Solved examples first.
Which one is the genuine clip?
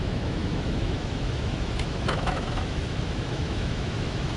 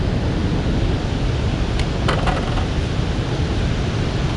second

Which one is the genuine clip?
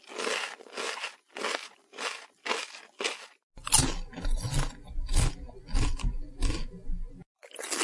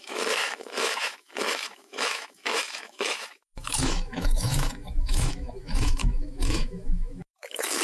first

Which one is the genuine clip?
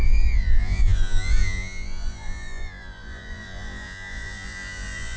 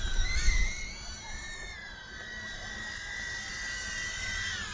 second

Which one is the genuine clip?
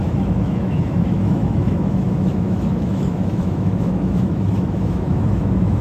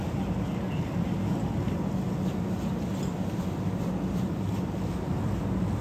second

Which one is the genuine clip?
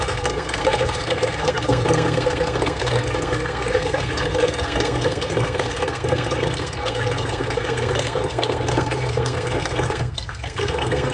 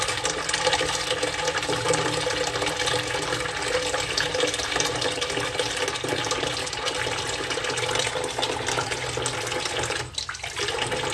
second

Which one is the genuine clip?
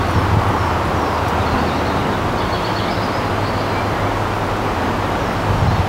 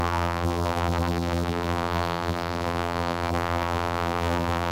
first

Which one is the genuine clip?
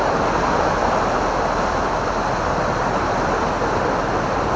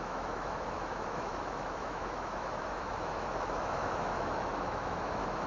first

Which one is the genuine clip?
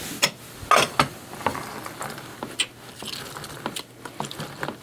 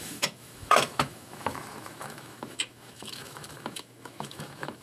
first